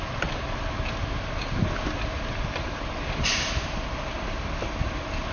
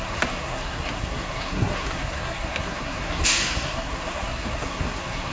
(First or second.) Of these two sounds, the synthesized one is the second